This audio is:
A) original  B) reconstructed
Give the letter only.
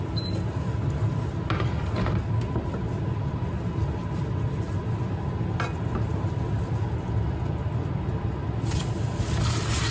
A